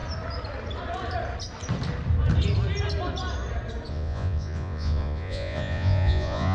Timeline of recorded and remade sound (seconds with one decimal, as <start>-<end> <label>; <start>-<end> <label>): 0.0-3.9 recorded; 3.9-6.5 remade